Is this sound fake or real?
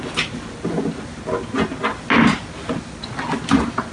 real